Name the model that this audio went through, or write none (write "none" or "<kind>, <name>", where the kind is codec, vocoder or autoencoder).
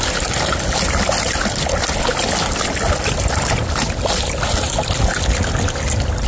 none